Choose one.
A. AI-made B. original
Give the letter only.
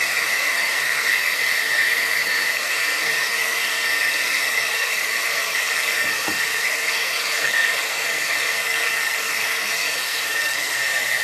A